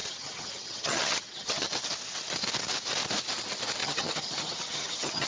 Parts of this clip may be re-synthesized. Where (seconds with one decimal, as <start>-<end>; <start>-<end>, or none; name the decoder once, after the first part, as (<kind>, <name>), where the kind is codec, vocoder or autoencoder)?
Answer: 0.0-1.7 (vocoder, HiFi-GAN); 3.8-5.3